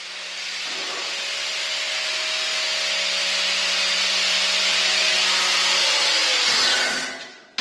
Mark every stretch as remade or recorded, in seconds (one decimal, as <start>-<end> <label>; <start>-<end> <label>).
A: 0.0-7.6 recorded